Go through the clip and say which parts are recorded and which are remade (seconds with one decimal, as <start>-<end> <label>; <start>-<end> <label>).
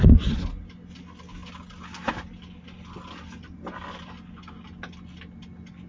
0.0-5.9 recorded